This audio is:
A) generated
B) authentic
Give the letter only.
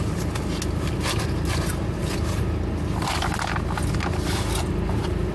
B